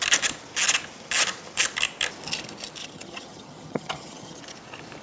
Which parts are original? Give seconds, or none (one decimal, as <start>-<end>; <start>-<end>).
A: 0.0-2.8; 4.4-5.0